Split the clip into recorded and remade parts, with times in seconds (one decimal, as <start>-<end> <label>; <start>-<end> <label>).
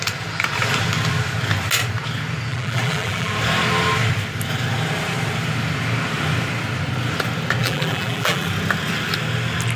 0.0-2.5 recorded; 2.5-3.3 remade; 3.3-7.6 recorded; 7.6-8.5 remade; 8.5-9.8 recorded